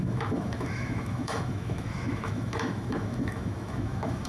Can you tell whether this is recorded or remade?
remade